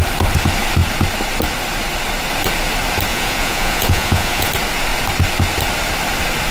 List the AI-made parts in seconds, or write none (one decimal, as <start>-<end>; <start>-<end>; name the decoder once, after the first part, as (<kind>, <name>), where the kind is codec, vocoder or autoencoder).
3.1-4.5 (vocoder, Vocos)